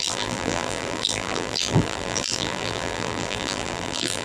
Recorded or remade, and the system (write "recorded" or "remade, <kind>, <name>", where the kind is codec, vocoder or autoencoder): remade, vocoder, BigVGAN v2